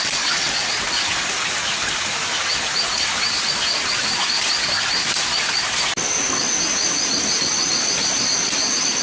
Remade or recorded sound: recorded